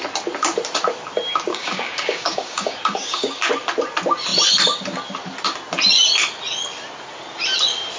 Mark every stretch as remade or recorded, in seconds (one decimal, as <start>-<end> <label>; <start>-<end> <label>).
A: 0.0-1.5 recorded; 1.5-3.5 remade; 3.5-8.0 recorded

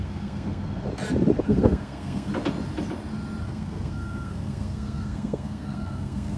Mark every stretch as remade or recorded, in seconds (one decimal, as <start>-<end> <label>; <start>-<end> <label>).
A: 0.0-0.9 remade; 0.9-1.4 recorded; 1.4-2.3 remade; 2.3-3.4 recorded; 3.4-6.4 remade

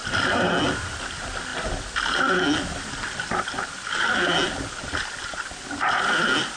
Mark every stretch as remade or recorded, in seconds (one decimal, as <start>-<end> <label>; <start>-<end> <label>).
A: 0.0-6.6 recorded

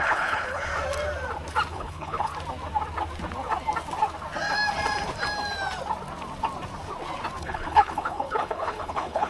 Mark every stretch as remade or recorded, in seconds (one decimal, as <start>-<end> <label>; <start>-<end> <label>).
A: 0.0-0.7 remade; 0.7-1.7 recorded; 1.7-2.3 remade; 2.3-7.4 recorded; 7.4-9.3 remade

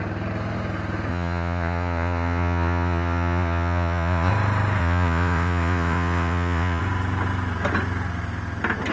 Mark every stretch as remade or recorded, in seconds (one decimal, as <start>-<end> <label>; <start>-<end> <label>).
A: 0.0-1.1 recorded; 1.1-4.3 remade; 4.3-4.8 recorded; 4.8-6.8 remade; 6.8-8.9 recorded

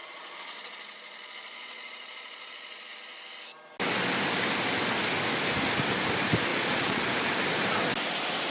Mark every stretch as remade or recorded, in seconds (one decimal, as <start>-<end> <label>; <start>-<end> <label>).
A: 0.0-2.8 remade; 2.8-6.5 recorded; 6.5-7.0 remade; 7.0-8.5 recorded

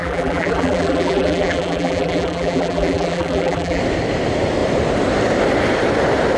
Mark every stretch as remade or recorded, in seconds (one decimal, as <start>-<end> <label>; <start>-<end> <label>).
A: 0.0-3.8 remade; 3.8-6.4 recorded

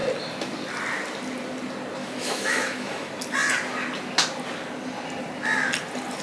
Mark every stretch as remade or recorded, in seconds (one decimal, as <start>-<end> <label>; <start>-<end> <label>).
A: 0.0-2.0 recorded; 2.0-3.1 remade; 3.1-6.2 recorded